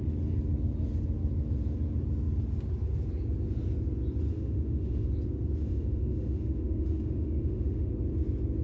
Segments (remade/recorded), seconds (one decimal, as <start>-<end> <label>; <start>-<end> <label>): 0.0-4.3 recorded; 4.3-5.1 remade; 5.1-5.6 recorded; 5.6-7.9 remade; 7.9-8.6 recorded